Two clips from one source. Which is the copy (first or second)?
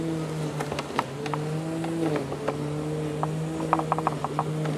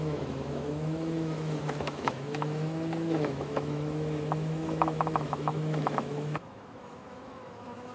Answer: second